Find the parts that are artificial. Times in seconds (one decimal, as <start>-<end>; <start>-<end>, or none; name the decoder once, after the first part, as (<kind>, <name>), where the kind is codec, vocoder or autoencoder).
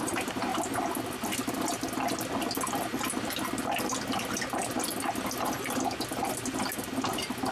none